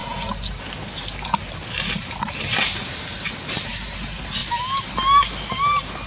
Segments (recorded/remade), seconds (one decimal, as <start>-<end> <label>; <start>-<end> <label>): 0.0-6.1 recorded